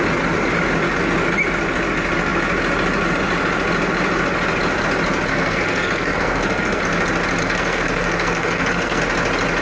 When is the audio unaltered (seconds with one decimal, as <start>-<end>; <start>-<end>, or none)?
0.0-5.3; 6.8-7.4; 9.0-9.6